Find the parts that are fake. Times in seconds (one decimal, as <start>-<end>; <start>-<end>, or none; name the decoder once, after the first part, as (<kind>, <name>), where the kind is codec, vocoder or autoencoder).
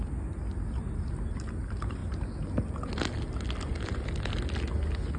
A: none